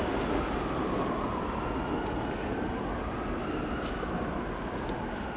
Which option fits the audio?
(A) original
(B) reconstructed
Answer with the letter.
A